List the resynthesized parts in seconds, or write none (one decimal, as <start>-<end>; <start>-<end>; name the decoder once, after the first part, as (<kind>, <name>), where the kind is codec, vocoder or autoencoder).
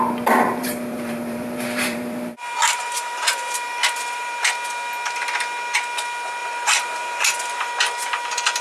0.6-4.5 (vocoder, BigVGAN v2); 6.4-7.7